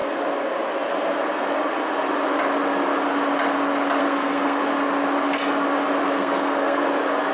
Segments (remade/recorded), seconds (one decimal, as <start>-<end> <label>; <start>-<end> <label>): 0.0-4.0 recorded; 4.0-4.6 remade; 4.6-6.2 recorded; 6.2-6.8 remade; 6.8-7.3 recorded